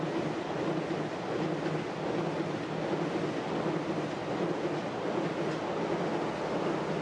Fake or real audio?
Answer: real